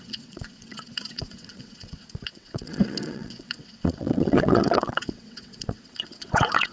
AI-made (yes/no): yes